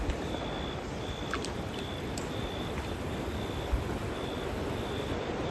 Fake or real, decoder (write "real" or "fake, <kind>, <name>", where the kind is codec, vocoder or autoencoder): real